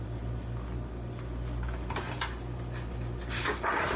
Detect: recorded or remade recorded